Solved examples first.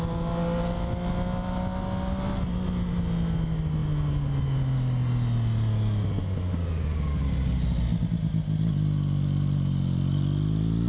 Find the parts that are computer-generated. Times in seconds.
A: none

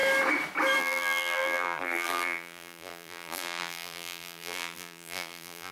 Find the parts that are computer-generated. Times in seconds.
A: 0.8-5.7 (vocoder, BigVGAN v2)

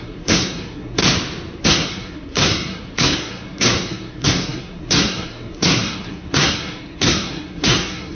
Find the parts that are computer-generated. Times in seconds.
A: 0.0-1.0 (codec, SNAC); 1.6-8.1

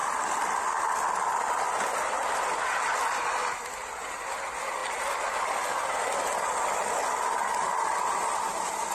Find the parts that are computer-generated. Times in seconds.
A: none

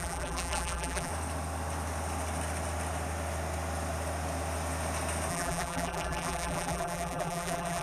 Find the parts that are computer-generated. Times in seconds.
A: 0.0-1.1 (vocoder, BigVGAN v2); 5.3-7.8

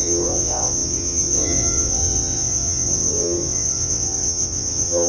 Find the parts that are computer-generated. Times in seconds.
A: 0.0-5.1 (vocoder, WaveNeXt)

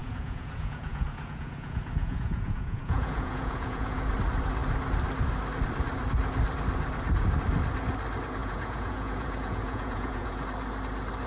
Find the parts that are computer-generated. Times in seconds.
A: 0.0-4.1 (vocoder, Vocos); 8.4-10.4